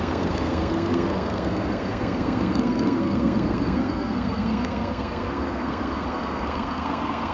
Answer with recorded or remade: remade